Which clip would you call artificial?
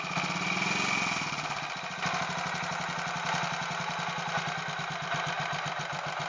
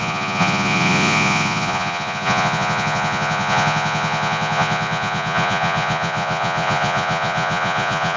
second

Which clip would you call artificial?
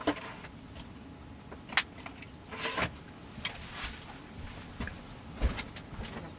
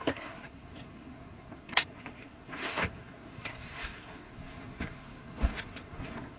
second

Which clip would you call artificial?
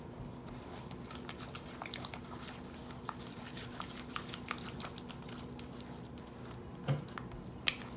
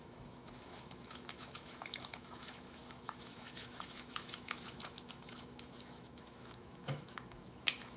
second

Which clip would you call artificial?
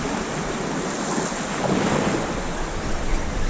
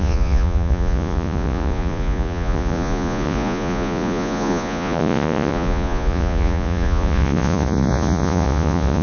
second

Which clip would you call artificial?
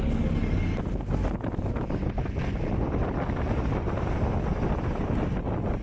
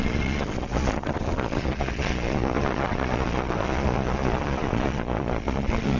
second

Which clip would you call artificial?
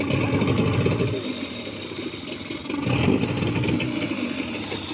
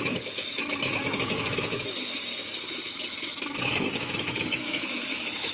second